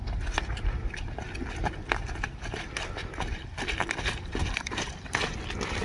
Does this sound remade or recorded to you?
recorded